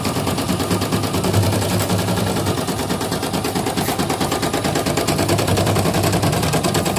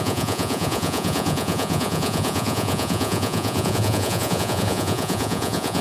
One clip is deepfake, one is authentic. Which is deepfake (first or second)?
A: second